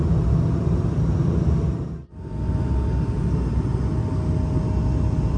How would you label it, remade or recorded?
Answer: recorded